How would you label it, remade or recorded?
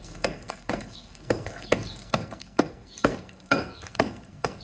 remade